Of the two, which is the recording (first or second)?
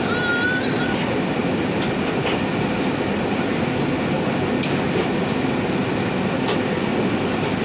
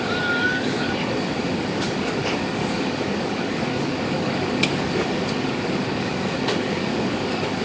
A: first